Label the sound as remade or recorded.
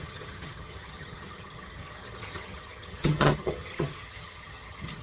remade